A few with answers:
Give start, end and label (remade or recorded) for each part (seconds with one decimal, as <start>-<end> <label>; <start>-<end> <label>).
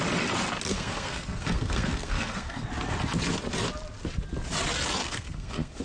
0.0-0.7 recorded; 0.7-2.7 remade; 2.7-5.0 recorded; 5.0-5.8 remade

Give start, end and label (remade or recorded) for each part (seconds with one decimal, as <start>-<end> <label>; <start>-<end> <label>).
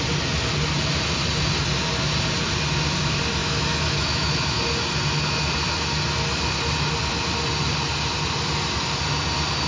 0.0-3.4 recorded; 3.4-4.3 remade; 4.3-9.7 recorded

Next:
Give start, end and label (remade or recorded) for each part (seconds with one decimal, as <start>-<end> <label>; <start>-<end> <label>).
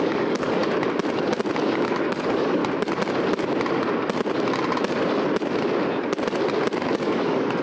0.0-0.6 remade; 0.6-1.6 recorded; 1.6-2.6 remade; 2.6-6.9 recorded; 6.9-7.6 remade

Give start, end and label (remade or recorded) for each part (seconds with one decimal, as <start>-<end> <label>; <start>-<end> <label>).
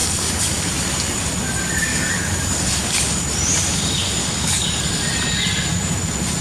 0.0-0.7 remade; 0.7-1.9 recorded; 1.9-3.2 remade; 3.2-4.2 recorded; 4.2-4.8 remade; 4.8-6.4 recorded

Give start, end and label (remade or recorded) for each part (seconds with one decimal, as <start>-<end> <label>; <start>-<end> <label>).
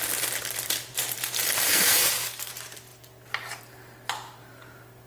0.0-1.7 recorded; 1.7-2.5 remade; 2.5-5.1 recorded